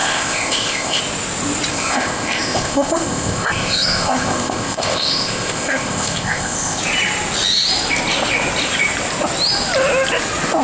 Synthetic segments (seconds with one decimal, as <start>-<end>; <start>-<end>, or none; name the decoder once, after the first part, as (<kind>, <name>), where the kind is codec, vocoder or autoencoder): 0.0-1.0 (codec, ZipCodec); 1.7-6.8